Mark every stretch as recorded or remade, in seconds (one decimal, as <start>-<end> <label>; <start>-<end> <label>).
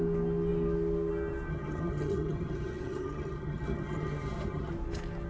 0.0-1.5 recorded; 1.5-4.7 remade; 4.7-5.3 recorded